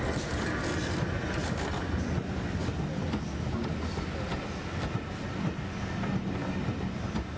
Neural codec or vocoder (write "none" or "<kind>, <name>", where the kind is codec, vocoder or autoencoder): none